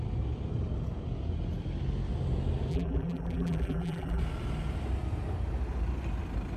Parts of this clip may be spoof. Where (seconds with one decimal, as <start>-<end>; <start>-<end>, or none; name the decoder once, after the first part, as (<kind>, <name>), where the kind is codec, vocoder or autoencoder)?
2.7-4.2 (vocoder, BigVGAN v2)